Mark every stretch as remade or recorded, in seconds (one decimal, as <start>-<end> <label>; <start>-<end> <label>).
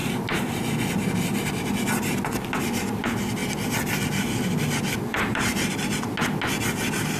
0.0-5.1 recorded; 5.1-5.7 remade; 5.7-7.2 recorded